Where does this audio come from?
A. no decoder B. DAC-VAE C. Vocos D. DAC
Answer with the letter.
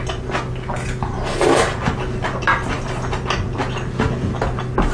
A